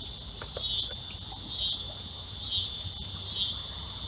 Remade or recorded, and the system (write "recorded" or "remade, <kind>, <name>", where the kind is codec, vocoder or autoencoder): recorded